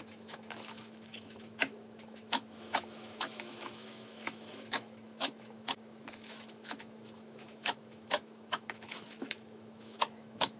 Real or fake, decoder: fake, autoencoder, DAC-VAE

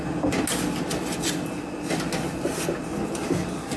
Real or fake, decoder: real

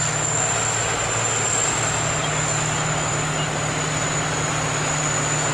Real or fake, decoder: real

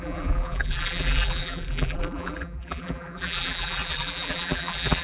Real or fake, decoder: fake, vocoder, BigVGAN v2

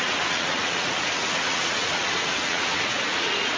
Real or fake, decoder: fake, vocoder, Vocos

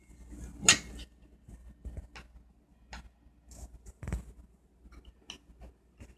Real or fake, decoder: real